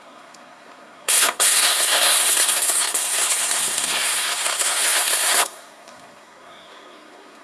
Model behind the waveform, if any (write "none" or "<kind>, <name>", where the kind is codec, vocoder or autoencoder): codec, SNAC